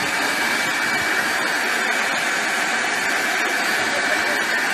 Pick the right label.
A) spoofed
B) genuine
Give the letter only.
B